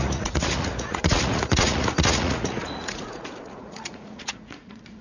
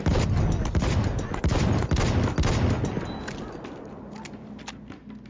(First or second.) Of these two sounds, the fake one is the first